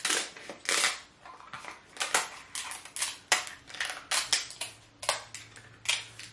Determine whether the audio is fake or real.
real